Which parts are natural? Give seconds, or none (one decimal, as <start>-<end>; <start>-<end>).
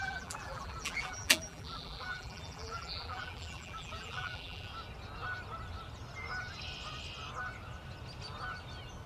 4.7-9.1